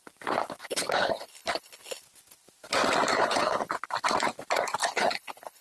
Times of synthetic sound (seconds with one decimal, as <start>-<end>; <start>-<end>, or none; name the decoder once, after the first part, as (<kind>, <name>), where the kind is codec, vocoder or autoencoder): 0.6-2.0 (codec, HILCodec); 3.1-3.7; 4.8-5.6